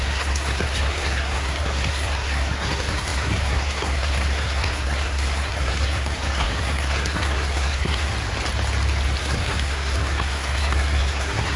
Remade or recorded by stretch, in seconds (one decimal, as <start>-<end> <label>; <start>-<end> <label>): 0.0-8.1 remade; 8.1-9.2 recorded; 9.2-11.6 remade